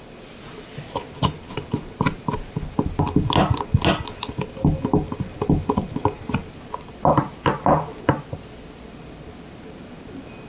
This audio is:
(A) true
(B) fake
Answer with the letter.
A